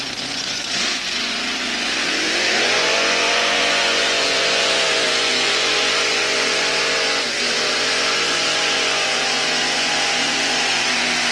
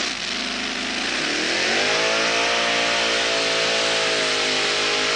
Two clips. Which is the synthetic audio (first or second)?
first